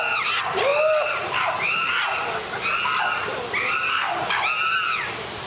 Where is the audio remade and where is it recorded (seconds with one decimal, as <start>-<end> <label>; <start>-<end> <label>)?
0.0-5.5 recorded